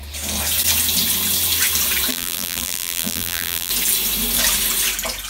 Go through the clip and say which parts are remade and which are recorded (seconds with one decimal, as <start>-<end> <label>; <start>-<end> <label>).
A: 0.0-2.1 recorded; 2.1-3.7 remade; 3.7-5.3 recorded